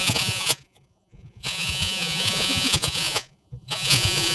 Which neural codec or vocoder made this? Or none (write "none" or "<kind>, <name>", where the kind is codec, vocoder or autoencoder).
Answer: vocoder, Vocos